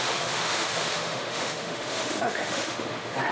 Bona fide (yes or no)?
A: no